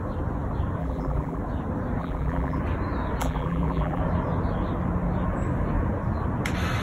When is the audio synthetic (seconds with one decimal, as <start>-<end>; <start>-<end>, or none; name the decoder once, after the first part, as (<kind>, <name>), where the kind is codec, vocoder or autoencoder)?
0.8-1.4 (vocoder, BigVGAN v2); 2.0-2.6; 3.2-4.0